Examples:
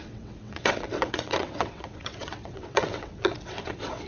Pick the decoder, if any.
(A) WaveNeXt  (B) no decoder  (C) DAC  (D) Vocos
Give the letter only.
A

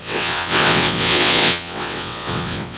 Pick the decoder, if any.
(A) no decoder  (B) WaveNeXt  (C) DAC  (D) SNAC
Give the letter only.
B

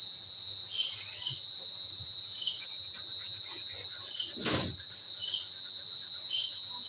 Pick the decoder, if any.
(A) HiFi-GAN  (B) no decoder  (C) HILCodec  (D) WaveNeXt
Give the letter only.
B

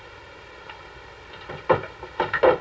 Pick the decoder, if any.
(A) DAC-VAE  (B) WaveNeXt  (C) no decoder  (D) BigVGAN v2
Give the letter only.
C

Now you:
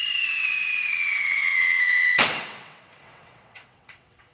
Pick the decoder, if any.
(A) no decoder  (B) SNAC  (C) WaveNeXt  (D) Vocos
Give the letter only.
C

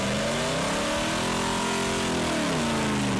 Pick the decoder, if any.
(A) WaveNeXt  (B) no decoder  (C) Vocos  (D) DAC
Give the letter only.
B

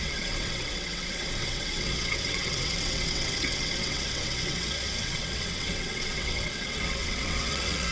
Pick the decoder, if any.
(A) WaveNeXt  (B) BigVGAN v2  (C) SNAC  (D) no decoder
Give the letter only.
A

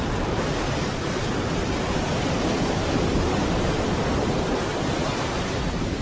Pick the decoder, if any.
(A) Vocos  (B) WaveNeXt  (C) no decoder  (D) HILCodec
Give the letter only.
C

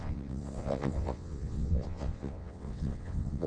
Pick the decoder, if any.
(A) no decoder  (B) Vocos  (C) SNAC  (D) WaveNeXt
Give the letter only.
D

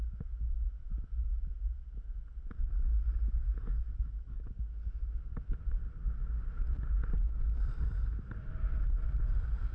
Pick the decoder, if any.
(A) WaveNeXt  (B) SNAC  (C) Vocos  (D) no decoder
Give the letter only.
D